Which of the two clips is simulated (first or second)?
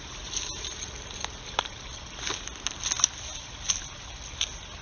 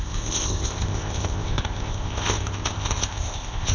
second